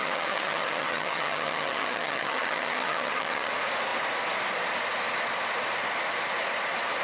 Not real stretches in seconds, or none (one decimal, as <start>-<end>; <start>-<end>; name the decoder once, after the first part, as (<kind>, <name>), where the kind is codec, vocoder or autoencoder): 0.0-3.5 (vocoder, HiFi-GAN)